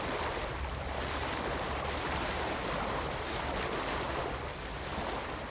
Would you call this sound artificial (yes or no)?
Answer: no